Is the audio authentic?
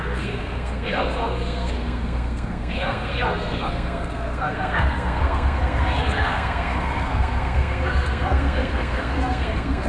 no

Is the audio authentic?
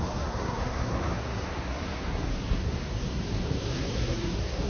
no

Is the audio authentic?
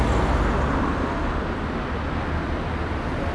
yes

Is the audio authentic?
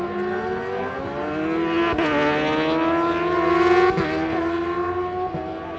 yes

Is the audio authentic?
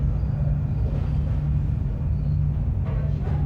yes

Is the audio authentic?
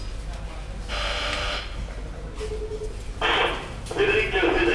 yes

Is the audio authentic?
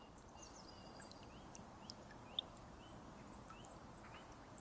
yes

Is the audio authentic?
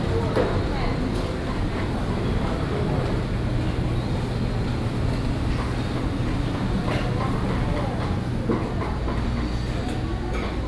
yes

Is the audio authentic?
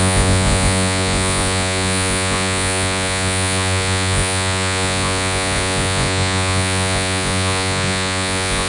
no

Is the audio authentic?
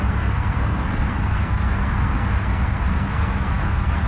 no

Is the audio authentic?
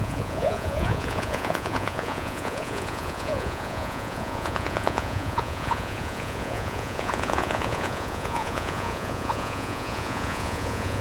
no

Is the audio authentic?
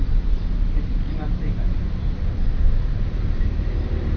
yes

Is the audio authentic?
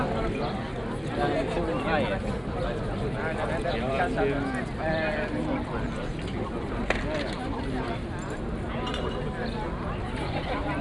yes